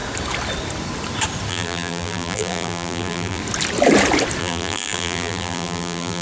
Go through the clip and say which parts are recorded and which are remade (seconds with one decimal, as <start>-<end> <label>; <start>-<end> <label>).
0.0-1.5 recorded; 1.5-3.4 remade; 3.4-4.4 recorded; 4.4-6.2 remade